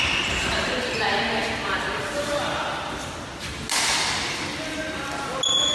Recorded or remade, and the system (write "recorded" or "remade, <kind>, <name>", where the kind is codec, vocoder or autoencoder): recorded